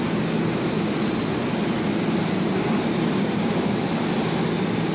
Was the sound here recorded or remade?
recorded